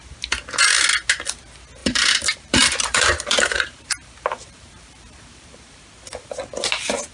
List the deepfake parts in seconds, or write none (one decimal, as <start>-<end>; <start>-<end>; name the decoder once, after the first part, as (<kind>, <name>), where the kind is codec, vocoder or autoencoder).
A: 1.8-5.8 (vocoder, BigVGAN v2)